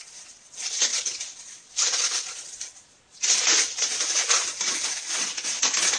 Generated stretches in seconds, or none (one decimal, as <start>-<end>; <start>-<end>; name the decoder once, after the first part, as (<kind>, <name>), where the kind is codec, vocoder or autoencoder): 0.0-6.0 (vocoder, Vocos)